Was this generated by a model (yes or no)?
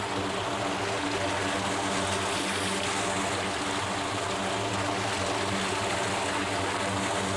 no